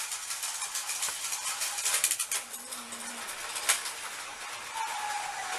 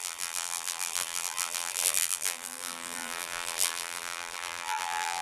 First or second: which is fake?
second